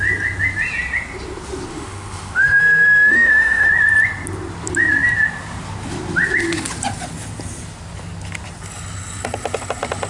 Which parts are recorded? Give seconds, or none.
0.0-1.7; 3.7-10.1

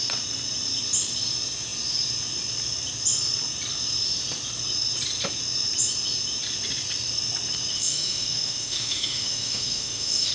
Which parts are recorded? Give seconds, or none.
0.0-7.7

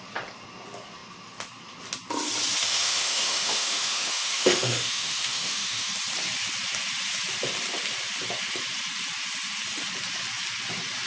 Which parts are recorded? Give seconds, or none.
0.0-2.6; 5.9-11.1

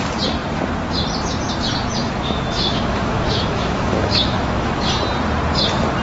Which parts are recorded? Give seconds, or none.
0.0-2.0; 4.7-6.0